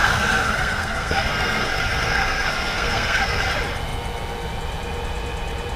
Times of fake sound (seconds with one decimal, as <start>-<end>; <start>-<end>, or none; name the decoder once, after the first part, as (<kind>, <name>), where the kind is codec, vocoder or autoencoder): 0.0-3.5 (codec, SNAC)